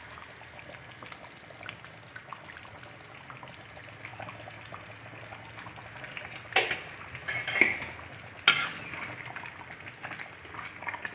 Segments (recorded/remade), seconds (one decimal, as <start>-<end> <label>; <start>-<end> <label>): 0.0-2.3 recorded; 2.3-2.9 remade; 2.9-4.1 recorded; 4.1-4.9 remade; 4.9-11.1 recorded

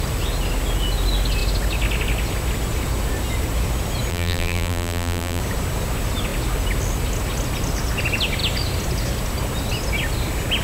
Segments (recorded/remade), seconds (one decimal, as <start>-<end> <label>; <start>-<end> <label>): 0.0-4.1 recorded; 4.1-5.4 remade; 5.4-10.6 recorded

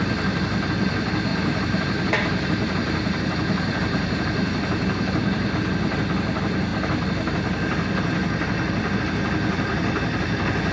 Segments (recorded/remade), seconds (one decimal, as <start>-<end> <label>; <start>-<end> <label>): 0.0-1.3 recorded; 1.3-5.5 remade; 5.5-10.7 recorded